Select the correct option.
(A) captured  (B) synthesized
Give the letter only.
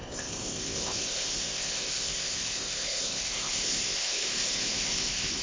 B